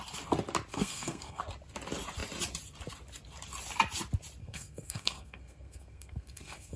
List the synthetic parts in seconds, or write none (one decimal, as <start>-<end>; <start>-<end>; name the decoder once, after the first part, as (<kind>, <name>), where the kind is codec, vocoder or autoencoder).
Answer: 0.7-1.4 (codec, SNAC); 4.4-6.8